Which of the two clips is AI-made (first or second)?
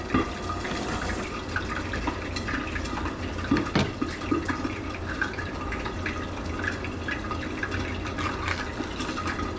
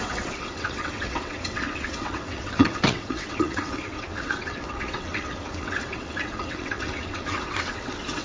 second